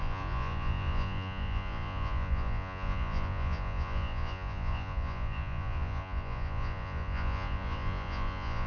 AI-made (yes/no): yes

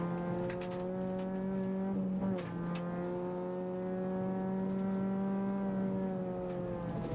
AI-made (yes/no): no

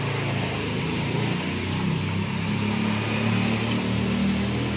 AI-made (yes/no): no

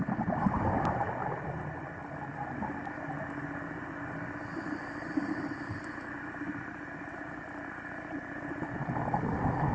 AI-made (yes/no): no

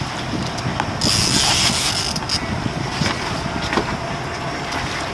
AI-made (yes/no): no